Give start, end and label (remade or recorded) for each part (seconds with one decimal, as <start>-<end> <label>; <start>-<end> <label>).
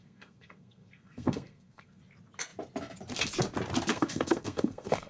0.0-2.0 remade; 2.0-3.9 recorded; 3.9-5.1 remade